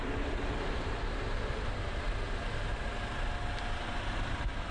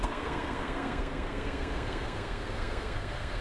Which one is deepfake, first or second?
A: second